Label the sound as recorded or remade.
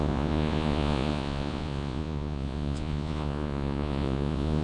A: remade